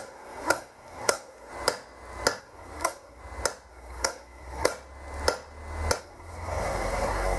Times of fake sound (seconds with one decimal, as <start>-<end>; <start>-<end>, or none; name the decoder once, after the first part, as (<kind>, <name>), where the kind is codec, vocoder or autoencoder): 0.0-1.5 (codec, SNAC); 2.4-3.2; 3.7-4.7; 6.0-7.4